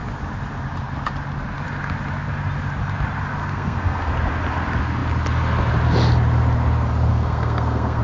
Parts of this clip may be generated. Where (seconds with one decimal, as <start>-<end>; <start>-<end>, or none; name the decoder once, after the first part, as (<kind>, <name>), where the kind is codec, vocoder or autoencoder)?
3.4-4.1 (codec, SNAC); 7.1-8.0